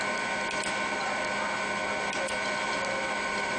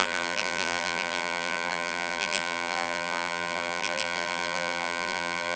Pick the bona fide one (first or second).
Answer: first